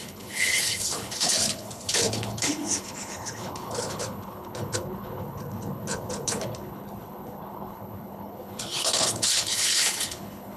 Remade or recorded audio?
remade